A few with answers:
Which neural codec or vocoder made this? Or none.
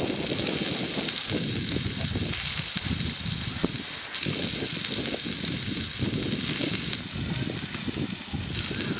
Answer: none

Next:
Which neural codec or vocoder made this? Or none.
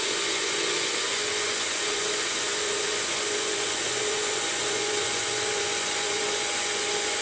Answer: vocoder, Vocos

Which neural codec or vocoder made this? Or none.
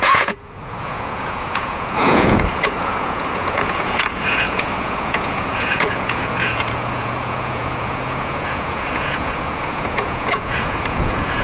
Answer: vocoder, Vocos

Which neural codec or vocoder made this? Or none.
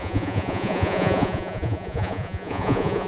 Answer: vocoder, Vocos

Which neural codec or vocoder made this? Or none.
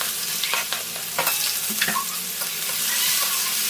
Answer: none